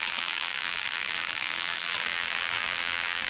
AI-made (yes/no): yes